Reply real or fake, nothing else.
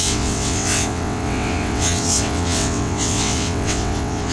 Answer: fake